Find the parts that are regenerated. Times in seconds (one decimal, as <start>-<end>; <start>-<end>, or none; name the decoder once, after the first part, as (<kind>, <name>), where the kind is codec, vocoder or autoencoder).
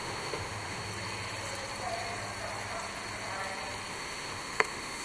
0.0-0.9 (autoencoder, DAC-VAE); 3.9-5.0